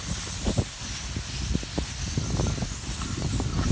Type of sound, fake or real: real